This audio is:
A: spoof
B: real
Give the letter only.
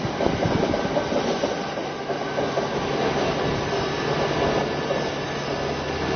B